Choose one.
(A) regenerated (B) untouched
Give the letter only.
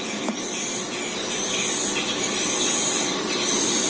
B